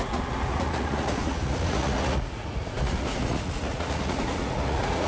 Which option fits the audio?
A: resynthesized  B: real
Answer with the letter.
A